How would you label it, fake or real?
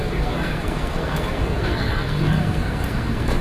fake